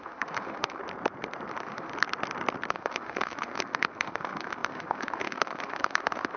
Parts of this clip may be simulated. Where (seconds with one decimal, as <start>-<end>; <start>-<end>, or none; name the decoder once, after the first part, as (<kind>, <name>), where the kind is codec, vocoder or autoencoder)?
0.0-0.8 (autoencoder, DAC-VAE); 1.5-1.9; 2.7-6.4